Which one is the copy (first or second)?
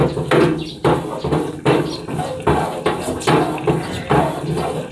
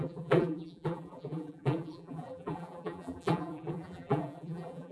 second